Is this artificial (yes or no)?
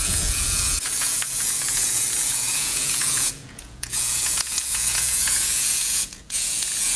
yes